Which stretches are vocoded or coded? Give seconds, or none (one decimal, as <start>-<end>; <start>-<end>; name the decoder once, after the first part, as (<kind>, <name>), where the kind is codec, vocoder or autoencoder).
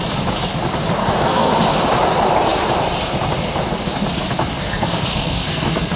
1.0-1.5 (codec, SNAC); 4.5-6.0